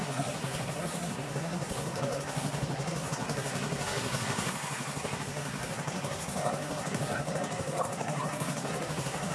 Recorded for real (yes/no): no